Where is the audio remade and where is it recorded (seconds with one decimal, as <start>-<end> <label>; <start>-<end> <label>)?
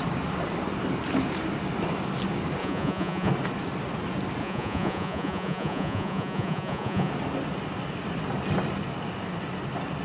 0.0-2.6 recorded; 2.6-3.3 remade; 3.3-4.4 recorded; 4.4-7.1 remade; 7.1-10.0 recorded